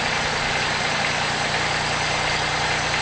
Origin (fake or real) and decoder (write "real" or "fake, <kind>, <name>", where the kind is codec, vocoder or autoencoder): real